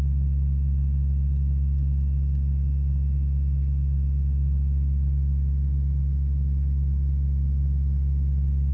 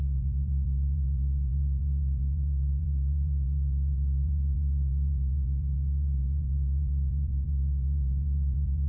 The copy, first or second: second